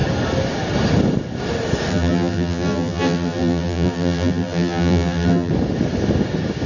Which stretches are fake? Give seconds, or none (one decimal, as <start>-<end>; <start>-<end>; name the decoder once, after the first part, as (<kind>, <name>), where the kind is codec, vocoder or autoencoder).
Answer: 1.9-5.5 (vocoder, BigVGAN v2)